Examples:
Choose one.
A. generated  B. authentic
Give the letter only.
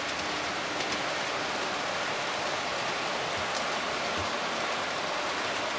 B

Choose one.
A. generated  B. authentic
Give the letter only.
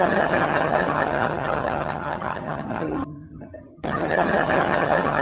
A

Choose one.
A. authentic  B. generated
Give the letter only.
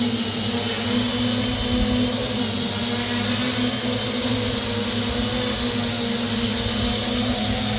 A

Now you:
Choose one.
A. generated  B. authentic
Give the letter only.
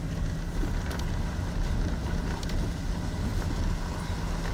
B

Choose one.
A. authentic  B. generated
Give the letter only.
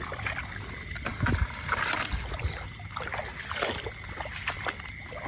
A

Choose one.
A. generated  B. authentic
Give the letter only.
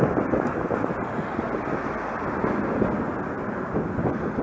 B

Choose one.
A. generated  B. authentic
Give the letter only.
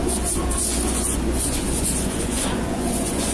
A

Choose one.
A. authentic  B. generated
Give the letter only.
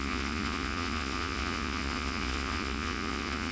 B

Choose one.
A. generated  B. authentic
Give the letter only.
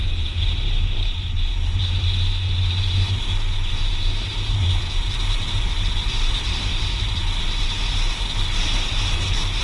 A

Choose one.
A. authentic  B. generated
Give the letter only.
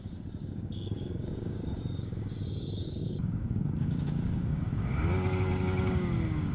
B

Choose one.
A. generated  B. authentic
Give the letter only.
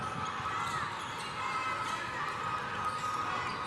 B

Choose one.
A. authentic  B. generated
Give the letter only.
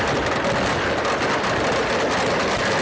A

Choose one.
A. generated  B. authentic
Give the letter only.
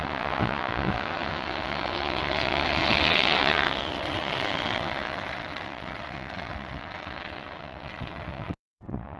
A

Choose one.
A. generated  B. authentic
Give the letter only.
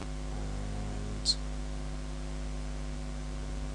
B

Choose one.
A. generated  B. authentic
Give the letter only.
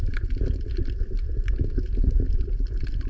B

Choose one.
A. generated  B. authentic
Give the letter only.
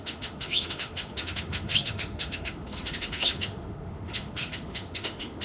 A